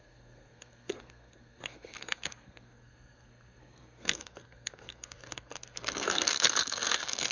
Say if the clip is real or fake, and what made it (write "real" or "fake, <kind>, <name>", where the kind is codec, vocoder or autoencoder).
fake, codec, SNAC